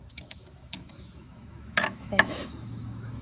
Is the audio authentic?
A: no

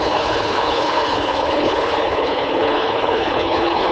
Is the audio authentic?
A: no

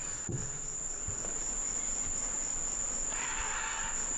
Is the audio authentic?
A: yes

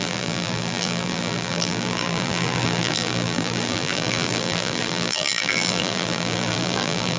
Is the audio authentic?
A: no